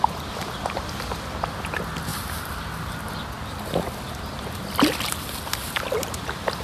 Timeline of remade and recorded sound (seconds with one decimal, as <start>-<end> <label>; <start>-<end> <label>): 0.0-6.6 recorded